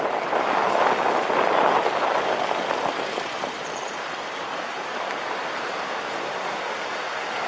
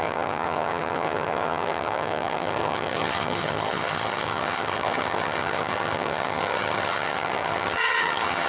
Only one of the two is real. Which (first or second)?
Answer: first